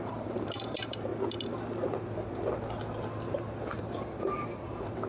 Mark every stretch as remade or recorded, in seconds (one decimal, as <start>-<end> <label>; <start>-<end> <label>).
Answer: 0.0-1.1 remade; 1.1-3.7 recorded; 3.7-5.1 remade